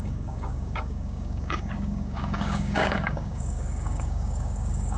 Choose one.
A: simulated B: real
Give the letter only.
A